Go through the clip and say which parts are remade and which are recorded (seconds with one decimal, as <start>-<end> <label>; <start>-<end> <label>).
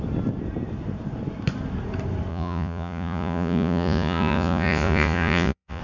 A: 0.0-2.3 recorded; 2.3-5.8 remade